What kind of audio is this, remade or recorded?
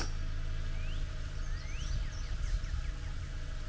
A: recorded